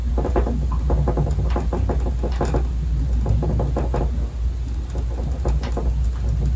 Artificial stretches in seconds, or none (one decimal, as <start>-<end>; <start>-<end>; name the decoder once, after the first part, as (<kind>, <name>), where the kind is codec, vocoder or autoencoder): none